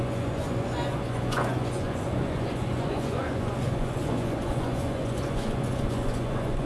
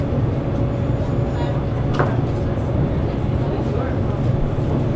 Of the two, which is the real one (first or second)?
second